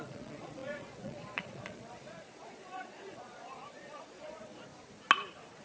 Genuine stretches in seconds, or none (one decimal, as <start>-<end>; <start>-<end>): 4.7-5.6